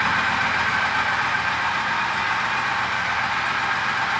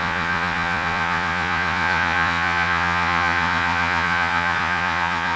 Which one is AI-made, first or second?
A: second